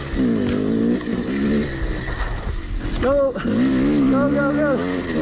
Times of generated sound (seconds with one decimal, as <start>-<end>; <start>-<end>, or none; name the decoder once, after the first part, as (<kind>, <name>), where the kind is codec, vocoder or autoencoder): none